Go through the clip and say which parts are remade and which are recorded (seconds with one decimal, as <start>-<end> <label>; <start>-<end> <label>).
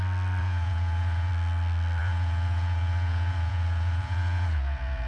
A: 0.0-0.4 recorded; 0.4-1.3 remade; 1.3-2.0 recorded; 2.0-5.1 remade